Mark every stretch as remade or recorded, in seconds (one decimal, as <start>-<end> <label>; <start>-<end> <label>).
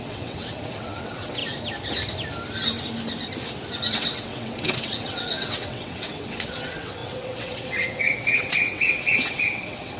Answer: 0.0-1.4 remade; 1.4-3.9 recorded; 3.9-10.0 remade